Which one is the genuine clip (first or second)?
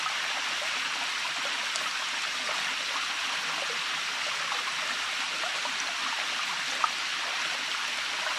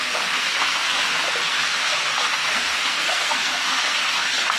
first